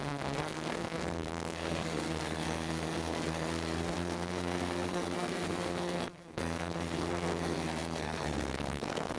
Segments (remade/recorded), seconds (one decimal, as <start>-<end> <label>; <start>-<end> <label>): 0.0-9.2 remade